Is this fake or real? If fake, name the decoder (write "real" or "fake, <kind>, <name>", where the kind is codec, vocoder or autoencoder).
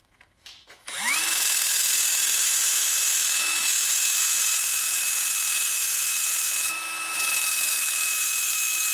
fake, autoencoder, DAC-VAE